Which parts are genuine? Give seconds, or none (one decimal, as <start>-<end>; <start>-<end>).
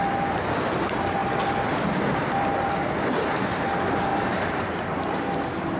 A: 0.0-4.1; 5.2-5.8